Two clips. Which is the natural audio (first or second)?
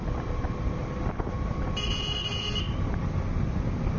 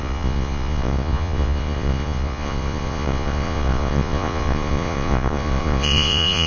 first